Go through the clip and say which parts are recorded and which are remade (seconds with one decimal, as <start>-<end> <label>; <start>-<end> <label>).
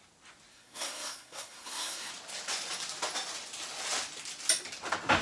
0.0-0.5 recorded; 0.5-2.1 remade; 2.1-5.2 recorded